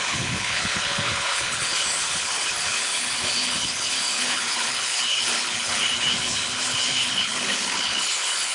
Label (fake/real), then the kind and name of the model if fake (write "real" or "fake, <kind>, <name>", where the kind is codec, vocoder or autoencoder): fake, codec, HILCodec